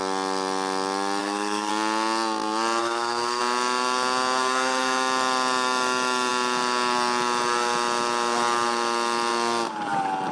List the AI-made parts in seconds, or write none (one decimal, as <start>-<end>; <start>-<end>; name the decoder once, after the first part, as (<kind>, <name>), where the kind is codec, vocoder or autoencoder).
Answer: 1.2-1.7 (codec, SNAC); 2.8-3.4